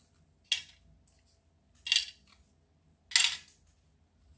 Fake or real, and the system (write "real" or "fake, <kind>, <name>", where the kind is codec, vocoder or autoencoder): real